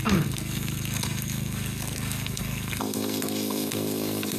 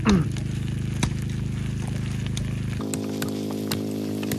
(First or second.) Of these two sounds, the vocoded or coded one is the first